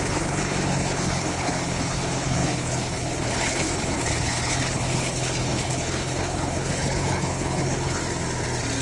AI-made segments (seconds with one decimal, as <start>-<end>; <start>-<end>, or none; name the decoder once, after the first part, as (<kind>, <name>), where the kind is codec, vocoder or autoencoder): 0.0-8.0 (codec, HILCodec)